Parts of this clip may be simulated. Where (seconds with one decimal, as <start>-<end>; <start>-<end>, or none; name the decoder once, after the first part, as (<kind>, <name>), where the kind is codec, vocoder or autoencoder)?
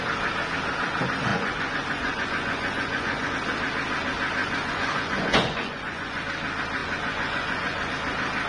1.3-3.3 (vocoder, Vocos); 4.4-6.2; 6.8-7.9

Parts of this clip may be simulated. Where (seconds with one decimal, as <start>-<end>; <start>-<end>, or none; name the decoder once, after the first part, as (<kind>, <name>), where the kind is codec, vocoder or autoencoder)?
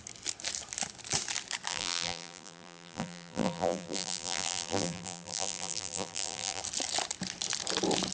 1.7-6.6 (vocoder, BigVGAN v2)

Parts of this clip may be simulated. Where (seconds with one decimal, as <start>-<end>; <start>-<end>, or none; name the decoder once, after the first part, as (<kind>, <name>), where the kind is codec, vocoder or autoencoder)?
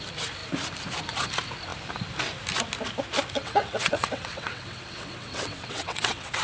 3.4-6.4 (vocoder, WaveNeXt)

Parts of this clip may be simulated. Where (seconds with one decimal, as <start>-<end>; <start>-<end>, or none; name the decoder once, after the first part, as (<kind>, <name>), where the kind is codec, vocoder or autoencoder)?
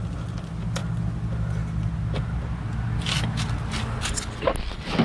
none